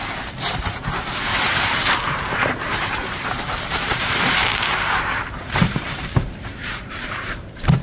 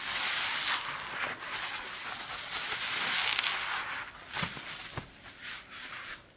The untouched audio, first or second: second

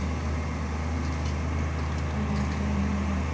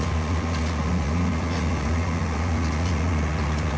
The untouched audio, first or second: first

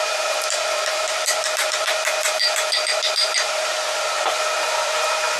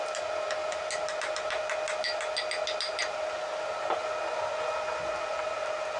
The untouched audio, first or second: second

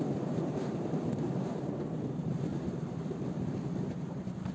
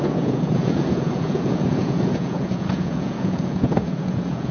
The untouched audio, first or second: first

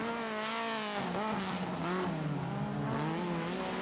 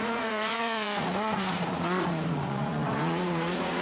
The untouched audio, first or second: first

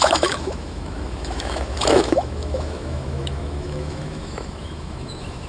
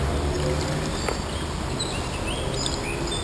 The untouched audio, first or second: second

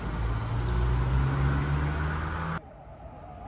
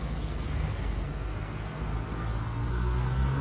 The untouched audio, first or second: first